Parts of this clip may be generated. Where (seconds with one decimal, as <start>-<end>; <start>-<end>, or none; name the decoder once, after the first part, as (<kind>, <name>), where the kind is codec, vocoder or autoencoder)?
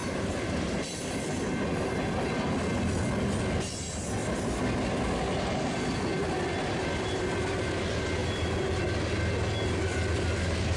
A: 0.0-1.0 (vocoder, BigVGAN v2); 4.2-4.7; 8.2-9.0